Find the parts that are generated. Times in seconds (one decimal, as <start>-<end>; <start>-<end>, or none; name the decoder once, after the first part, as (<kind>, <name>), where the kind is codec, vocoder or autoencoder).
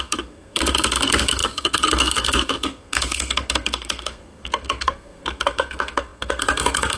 0.0-7.0 (codec, SNAC)